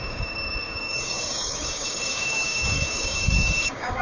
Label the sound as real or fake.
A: fake